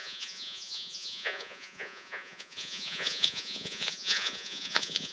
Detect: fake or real fake